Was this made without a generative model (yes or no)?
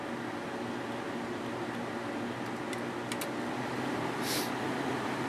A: yes